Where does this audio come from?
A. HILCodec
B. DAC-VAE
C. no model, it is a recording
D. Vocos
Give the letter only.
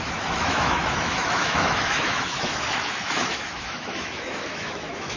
B